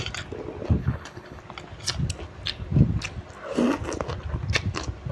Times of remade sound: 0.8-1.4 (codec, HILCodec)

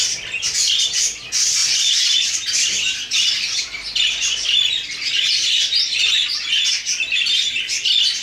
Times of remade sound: 1.6-6.5 (vocoder, BigVGAN v2)

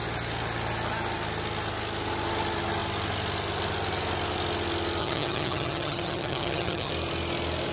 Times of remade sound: 5.0-6.9 (vocoder, HiFi-GAN)

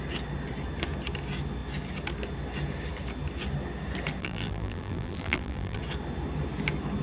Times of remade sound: 4.2-5.8 (vocoder, BigVGAN v2)

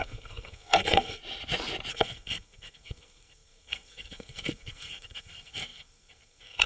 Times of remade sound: 0.0-1.2 (codec, SNAC); 1.9-6.7

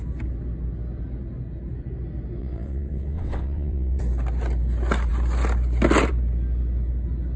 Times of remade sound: 2.4-4.0 (vocoder, WaveNeXt)

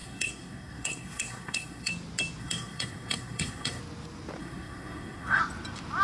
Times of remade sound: 0.0-1.9 (codec, SNAC); 2.4-3.8; 4.4-5.4